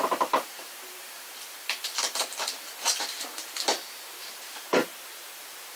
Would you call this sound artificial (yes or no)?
yes